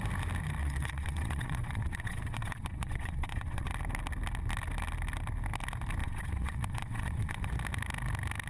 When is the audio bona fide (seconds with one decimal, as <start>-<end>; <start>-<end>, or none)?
0.0-0.6; 3.7-6.0; 7.5-8.5